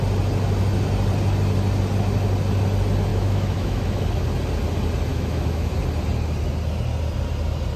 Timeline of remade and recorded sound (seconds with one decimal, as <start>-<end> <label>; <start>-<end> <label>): 0.0-3.1 recorded; 3.1-4.0 remade; 4.0-5.1 recorded; 5.1-5.7 remade; 5.7-7.8 recorded